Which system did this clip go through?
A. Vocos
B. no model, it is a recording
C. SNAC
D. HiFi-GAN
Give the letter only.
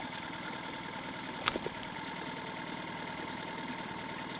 B